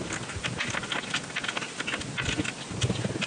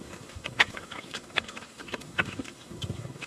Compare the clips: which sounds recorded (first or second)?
first